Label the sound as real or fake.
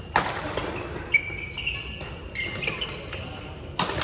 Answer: real